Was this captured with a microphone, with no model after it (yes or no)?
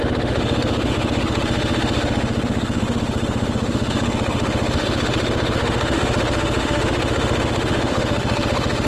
no